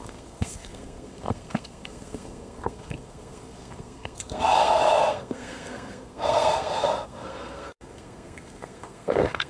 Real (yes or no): no